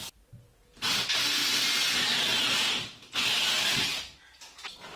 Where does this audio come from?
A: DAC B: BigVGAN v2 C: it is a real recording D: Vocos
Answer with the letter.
C